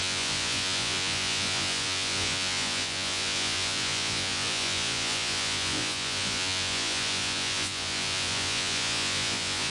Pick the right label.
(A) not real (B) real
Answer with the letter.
A